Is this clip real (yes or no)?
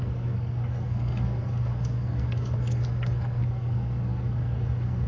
no